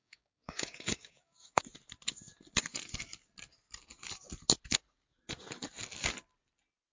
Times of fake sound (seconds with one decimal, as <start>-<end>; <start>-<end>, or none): 0.0-1.6